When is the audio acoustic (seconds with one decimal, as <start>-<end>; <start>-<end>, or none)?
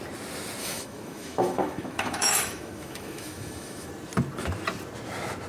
0.0-0.6; 3.9-5.5